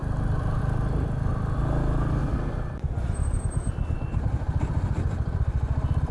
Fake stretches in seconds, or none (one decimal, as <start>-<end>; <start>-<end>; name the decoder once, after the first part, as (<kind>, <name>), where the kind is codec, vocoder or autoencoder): 2.2-5.4 (vocoder, BigVGAN v2)